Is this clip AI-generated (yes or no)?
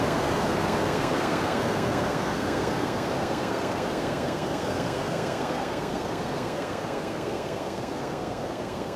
yes